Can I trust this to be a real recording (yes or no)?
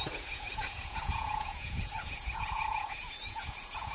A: no